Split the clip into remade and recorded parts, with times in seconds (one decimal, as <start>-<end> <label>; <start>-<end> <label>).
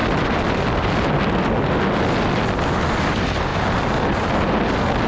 0.0-5.1 recorded